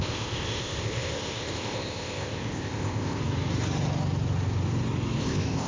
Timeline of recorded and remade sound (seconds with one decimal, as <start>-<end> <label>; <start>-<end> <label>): 0.0-3.2 remade; 3.2-5.2 recorded; 5.2-5.7 remade